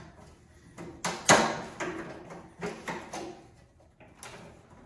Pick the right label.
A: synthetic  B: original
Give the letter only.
B